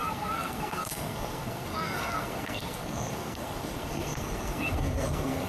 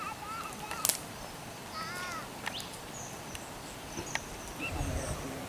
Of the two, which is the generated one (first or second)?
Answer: first